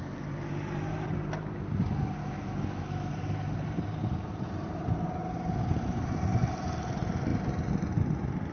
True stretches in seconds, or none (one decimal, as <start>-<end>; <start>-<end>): 0.0-2.2; 3.1-8.5